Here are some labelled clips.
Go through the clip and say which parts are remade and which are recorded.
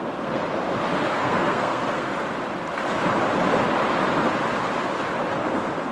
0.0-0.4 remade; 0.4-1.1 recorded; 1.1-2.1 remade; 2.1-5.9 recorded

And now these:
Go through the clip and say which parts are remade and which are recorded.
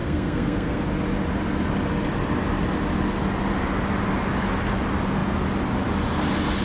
0.0-0.8 remade; 0.8-6.6 recorded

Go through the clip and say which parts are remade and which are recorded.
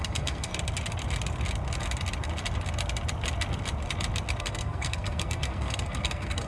0.0-0.5 remade; 0.5-4.4 recorded; 4.4-6.5 remade